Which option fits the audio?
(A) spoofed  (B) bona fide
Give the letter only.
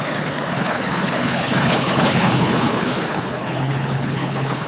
A